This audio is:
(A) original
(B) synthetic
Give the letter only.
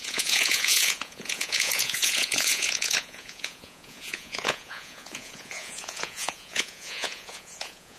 B